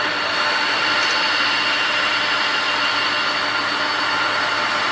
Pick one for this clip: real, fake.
real